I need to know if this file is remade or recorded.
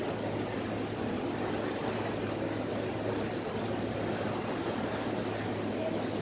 recorded